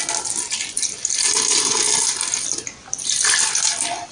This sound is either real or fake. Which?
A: real